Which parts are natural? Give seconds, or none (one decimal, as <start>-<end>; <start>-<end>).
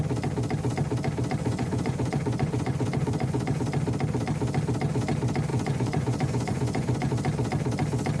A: 0.0-1.4; 3.6-5.5; 7.1-8.2